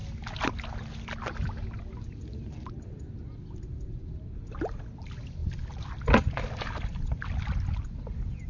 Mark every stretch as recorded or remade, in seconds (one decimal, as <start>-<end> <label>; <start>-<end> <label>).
0.0-8.5 recorded